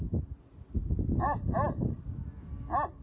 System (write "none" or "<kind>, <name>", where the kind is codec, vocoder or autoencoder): none